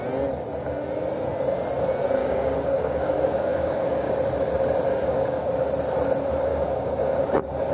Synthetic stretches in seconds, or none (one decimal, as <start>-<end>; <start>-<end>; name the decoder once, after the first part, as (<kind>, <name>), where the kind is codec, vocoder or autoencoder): 2.2-4.1 (codec, DAC); 4.9-5.5; 6.5-7.7